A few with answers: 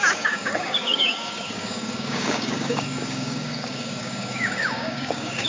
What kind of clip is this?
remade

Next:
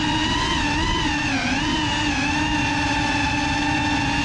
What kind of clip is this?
recorded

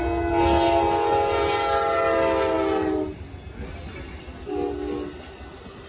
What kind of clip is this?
recorded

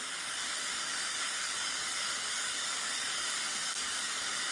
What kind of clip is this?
remade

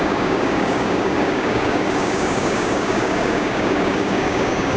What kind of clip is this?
remade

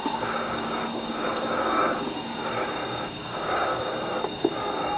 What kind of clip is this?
remade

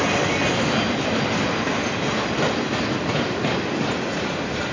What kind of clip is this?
recorded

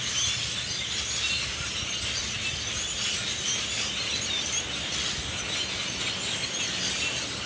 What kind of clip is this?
recorded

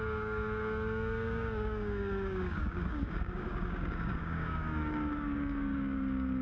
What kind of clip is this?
remade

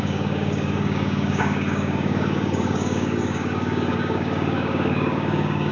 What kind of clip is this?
remade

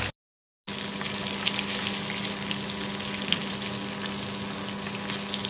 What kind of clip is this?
recorded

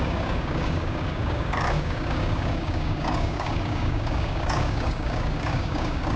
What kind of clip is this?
remade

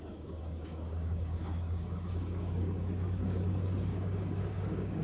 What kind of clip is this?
remade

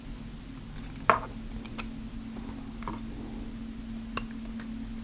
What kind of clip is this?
recorded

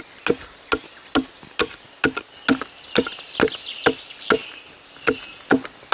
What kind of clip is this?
recorded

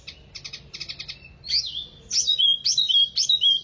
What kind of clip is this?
recorded